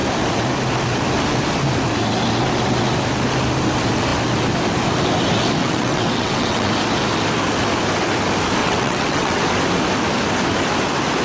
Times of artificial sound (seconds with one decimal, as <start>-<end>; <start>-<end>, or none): 5.6-6.7; 8.6-9.4

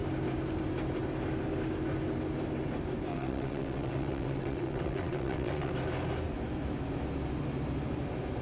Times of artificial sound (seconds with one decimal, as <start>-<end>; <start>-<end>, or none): 3.1-5.7

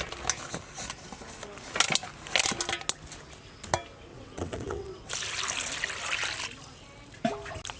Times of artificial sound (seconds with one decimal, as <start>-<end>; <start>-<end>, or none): 4.1-5.1

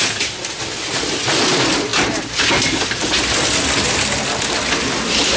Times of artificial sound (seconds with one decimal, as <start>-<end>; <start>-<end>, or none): none

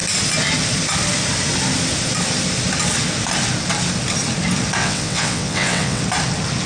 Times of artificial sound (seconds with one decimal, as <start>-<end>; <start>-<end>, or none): 4.8-6.0

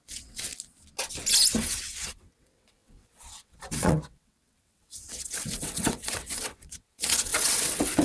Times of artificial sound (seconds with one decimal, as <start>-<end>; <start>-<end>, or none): 0.0-0.5; 1.6-8.0

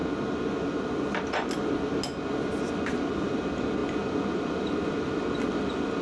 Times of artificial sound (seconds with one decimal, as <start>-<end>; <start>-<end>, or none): none